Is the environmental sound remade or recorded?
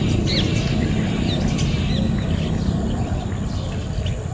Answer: recorded